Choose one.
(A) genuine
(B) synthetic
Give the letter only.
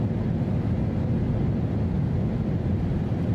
A